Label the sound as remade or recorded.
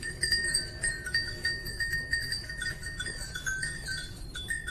remade